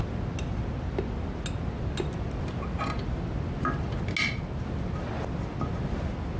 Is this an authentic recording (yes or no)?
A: yes